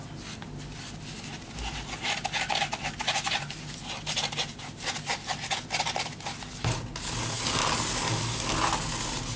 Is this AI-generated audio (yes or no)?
no